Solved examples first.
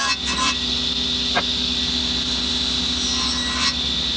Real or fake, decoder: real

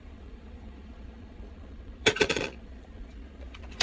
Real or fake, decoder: fake, vocoder, Vocos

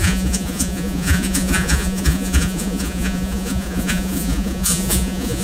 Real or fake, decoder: fake, vocoder, Vocos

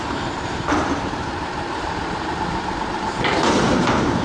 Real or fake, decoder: fake, vocoder, BigVGAN v2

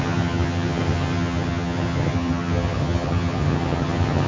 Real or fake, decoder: fake, vocoder, HiFi-GAN